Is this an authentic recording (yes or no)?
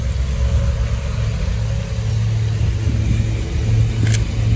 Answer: yes